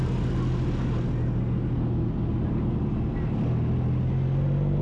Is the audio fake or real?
real